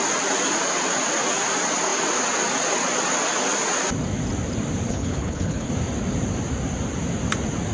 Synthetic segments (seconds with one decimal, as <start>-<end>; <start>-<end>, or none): 4.9-5.7